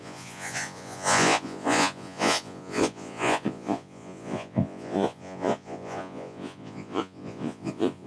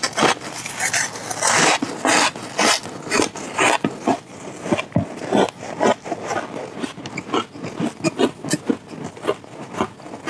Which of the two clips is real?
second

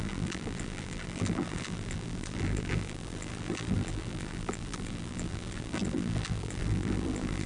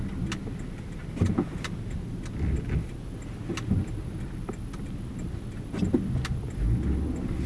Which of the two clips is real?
second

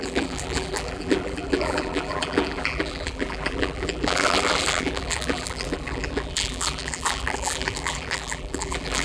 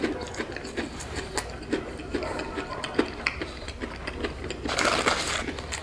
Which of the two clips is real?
second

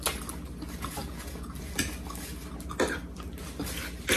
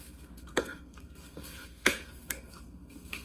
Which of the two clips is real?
first